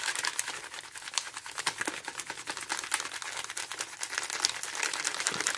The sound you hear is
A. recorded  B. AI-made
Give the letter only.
A